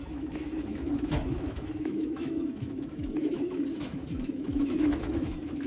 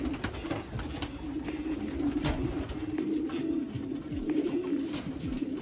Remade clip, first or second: first